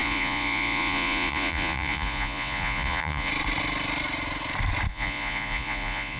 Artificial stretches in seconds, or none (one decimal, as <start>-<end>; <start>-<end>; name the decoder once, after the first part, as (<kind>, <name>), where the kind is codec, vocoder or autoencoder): 0.0-3.3 (vocoder, Vocos); 4.9-6.2